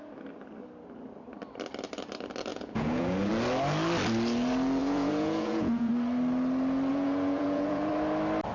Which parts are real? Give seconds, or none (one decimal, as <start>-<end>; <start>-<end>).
0.0-2.5; 3.3-4.8; 5.9-6.9; 7.9-8.5